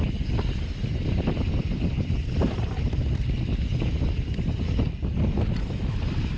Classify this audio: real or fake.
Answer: real